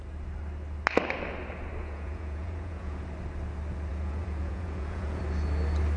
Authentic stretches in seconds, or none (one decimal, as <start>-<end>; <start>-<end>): 0.0-1.8; 3.0-3.9; 5.2-6.0